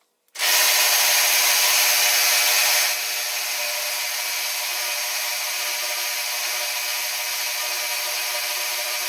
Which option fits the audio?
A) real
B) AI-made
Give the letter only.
A